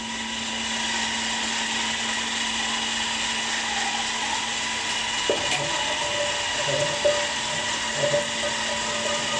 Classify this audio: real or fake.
real